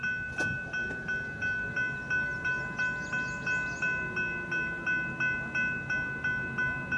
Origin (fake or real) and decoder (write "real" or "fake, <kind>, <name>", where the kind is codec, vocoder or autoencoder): real